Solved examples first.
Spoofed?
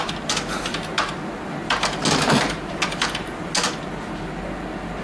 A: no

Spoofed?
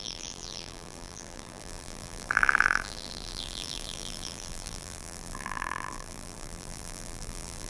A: yes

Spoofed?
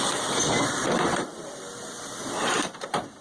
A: yes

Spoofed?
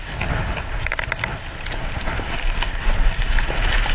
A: no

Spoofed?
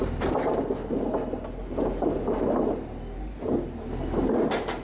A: no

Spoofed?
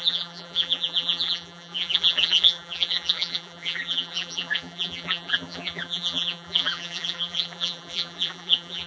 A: yes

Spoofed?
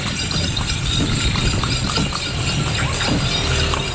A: no